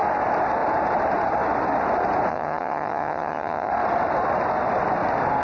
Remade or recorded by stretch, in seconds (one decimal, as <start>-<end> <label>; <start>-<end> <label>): 0.0-2.3 recorded; 2.3-3.7 remade; 3.7-5.4 recorded